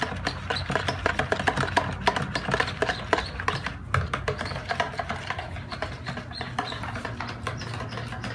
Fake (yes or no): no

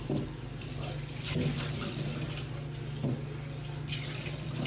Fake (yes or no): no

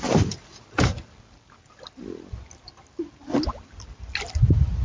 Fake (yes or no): no